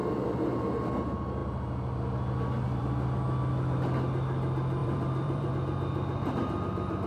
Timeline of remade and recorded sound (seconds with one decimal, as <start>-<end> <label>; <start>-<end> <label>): 0.0-4.8 recorded; 4.8-5.5 remade; 5.5-7.1 recorded